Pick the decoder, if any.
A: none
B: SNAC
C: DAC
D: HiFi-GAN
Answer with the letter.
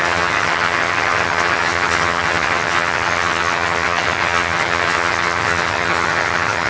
D